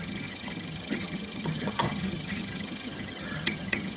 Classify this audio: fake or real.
fake